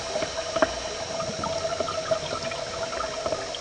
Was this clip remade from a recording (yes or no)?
no